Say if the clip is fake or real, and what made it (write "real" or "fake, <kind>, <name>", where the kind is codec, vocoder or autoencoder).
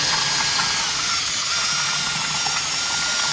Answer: real